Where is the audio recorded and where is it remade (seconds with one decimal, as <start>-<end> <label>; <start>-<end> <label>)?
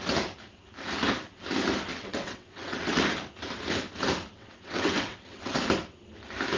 0.0-1.9 recorded; 1.9-3.0 remade; 3.0-4.3 recorded; 4.3-5.6 remade; 5.6-6.6 recorded